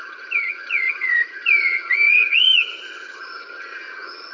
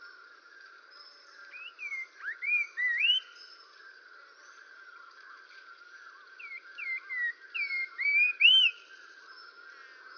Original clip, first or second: second